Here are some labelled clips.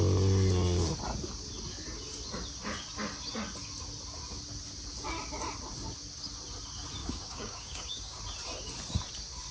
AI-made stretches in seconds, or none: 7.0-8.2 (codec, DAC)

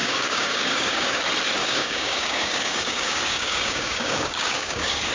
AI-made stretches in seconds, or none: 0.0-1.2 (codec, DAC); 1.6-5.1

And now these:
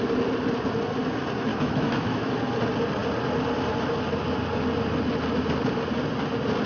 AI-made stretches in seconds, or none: 1.5-2.3 (autoencoder, DAC-VAE)

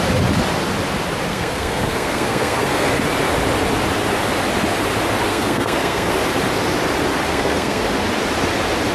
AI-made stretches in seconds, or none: 1.3-2.9 (codec, SNAC); 5.3-6.1; 7.3-7.8

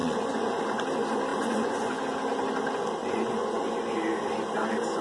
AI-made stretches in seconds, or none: 0.0-0.6 (vocoder, Vocos); 1.3-2.0; 3.0-3.7

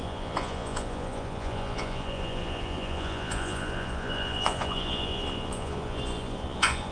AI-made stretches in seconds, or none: 0.0-6.9 (vocoder, Vocos)

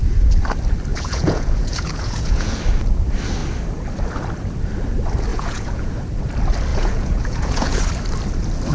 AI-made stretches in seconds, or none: 0.9-2.6 (vocoder, Vocos); 5.3-5.9; 6.7-7.8